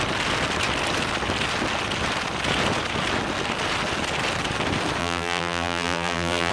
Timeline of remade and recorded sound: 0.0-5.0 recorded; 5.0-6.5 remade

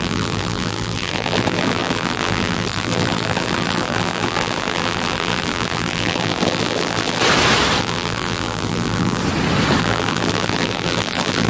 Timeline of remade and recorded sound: 0.0-7.2 remade; 7.2-7.8 recorded; 7.8-9.2 remade; 9.2-9.8 recorded; 9.8-11.5 remade

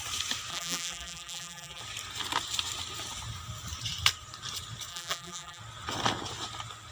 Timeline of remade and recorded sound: 0.0-0.5 recorded; 0.5-1.8 remade; 1.8-4.9 recorded; 4.9-5.6 remade; 5.6-6.9 recorded